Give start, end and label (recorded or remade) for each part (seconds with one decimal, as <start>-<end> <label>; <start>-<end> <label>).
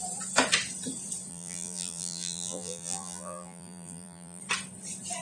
0.0-1.3 recorded; 1.3-4.4 remade; 4.4-5.2 recorded